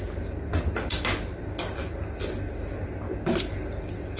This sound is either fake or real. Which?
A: real